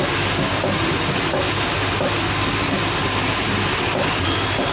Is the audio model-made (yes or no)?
no